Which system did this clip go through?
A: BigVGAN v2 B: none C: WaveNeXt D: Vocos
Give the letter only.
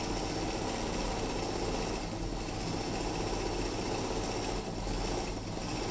B